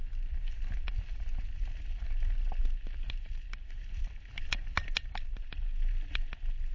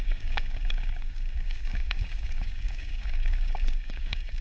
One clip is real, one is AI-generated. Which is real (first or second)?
first